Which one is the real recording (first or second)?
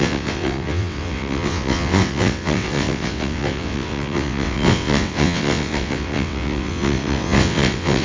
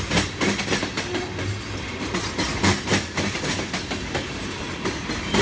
second